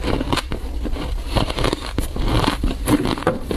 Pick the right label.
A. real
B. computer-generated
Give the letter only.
B